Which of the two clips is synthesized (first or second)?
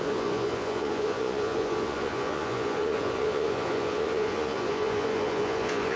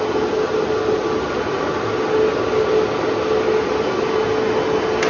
first